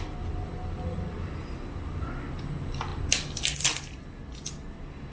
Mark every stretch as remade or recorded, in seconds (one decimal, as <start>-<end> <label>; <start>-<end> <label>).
0.0-5.1 recorded